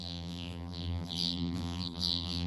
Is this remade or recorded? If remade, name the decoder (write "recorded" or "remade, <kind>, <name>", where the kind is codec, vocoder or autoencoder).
remade, vocoder, BigVGAN v2